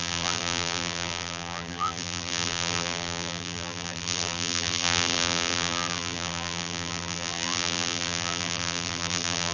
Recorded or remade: remade